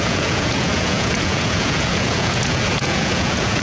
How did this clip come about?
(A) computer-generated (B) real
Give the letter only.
A